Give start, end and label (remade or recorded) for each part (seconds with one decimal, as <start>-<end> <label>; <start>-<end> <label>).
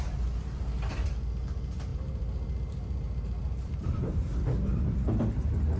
0.0-1.9 recorded; 1.9-4.4 remade; 4.4-5.8 recorded